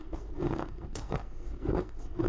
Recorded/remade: remade